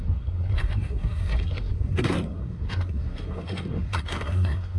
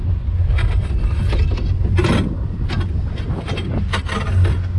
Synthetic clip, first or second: first